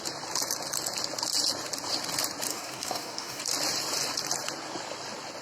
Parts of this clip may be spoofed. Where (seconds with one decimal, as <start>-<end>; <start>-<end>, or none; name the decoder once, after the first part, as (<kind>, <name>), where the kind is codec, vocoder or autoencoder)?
2.5-3.4 (codec, DAC)